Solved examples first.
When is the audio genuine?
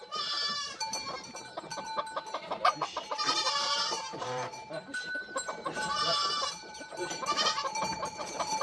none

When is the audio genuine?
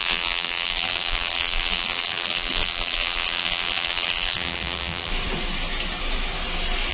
5.1-6.9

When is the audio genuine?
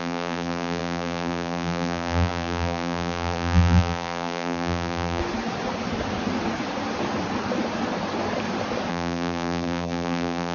5.2-8.9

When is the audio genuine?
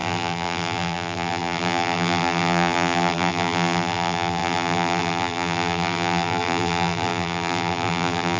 none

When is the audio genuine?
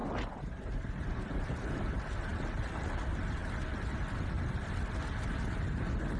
1.2-6.2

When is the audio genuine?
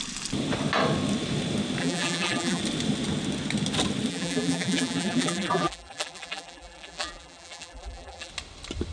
0.0-1.8; 2.6-4.1; 8.3-8.9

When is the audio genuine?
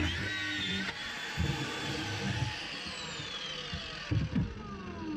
0.0-5.2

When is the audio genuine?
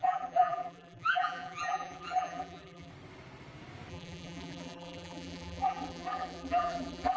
2.9-3.9